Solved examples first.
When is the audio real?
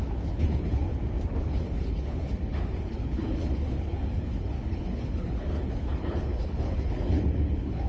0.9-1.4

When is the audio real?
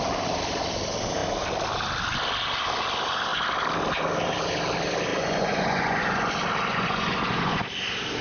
0.0-5.1; 6.3-6.7; 7.6-8.2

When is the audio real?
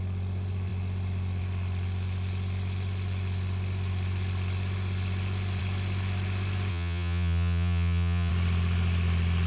0.0-6.7; 8.3-9.5